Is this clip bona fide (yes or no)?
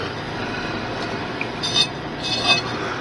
yes